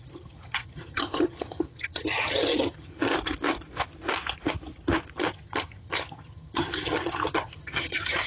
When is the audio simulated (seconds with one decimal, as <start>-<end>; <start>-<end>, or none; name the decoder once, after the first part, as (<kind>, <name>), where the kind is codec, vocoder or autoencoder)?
0.0-3.1 (vocoder, HiFi-GAN); 5.3-8.3